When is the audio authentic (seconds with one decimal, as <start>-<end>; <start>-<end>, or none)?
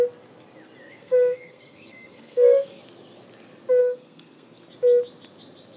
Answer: 0.0-0.8; 2.8-3.8; 4.7-5.8